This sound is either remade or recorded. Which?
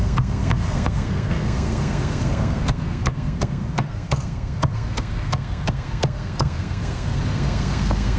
remade